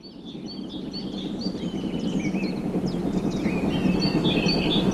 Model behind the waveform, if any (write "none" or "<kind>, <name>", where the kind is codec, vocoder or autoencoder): none